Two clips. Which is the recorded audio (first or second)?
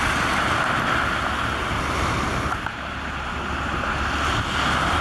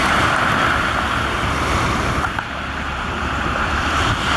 first